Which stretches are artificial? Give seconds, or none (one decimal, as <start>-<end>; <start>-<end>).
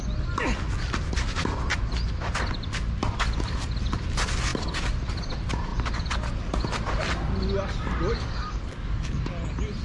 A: 8.1-9.3